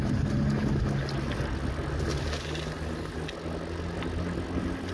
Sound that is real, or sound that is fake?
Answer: real